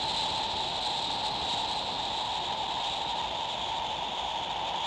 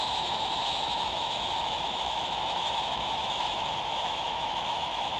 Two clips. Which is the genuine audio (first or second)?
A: first